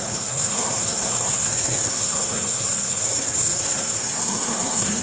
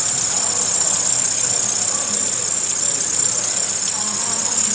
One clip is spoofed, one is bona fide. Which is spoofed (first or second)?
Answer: first